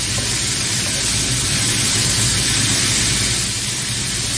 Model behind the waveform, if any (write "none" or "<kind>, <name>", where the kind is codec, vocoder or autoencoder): none